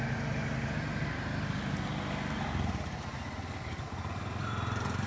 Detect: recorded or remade recorded